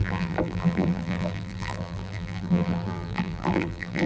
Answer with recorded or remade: remade